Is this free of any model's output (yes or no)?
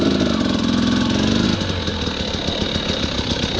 yes